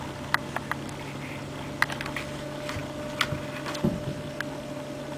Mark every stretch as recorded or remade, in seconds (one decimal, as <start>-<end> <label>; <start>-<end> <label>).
0.0-5.2 recorded